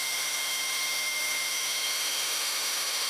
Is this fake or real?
fake